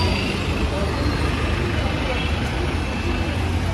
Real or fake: real